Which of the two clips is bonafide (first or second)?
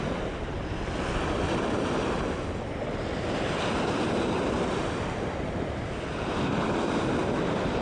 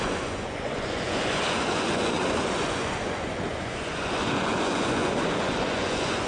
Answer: first